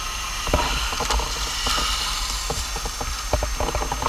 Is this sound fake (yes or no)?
no